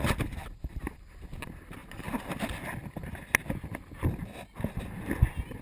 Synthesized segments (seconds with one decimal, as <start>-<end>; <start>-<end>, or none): 0.4-1.1